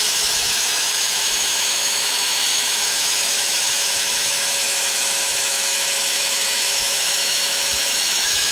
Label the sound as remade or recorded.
remade